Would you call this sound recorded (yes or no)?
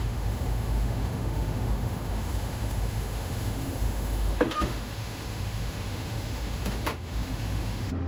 no